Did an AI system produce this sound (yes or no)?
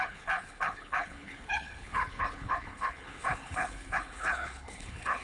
yes